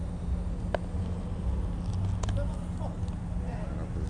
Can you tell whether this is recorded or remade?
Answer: recorded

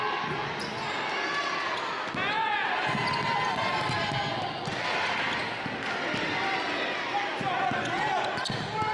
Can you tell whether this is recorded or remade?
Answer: recorded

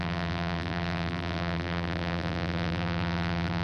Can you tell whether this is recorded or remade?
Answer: remade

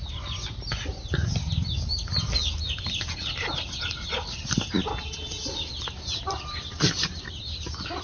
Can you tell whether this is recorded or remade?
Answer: recorded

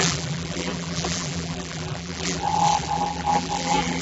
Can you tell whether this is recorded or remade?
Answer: remade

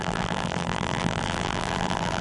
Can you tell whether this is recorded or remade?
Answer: remade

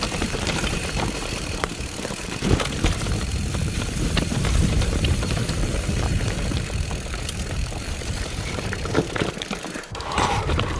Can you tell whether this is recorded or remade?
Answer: remade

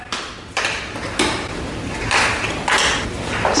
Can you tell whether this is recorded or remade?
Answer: recorded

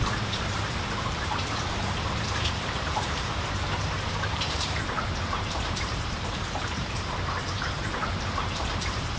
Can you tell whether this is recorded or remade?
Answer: remade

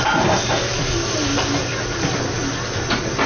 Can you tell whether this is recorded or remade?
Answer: recorded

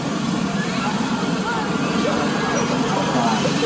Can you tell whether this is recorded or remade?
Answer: remade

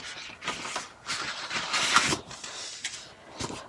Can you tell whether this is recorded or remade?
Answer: recorded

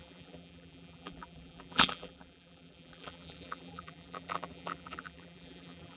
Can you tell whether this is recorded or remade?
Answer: remade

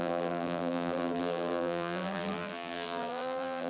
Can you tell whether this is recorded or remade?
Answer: remade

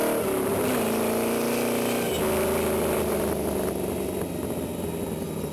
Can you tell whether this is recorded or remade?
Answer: recorded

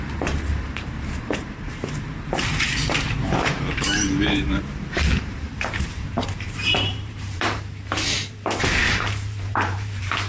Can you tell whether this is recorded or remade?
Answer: remade